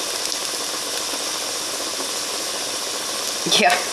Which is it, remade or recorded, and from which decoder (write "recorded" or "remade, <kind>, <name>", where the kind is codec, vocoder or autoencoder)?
recorded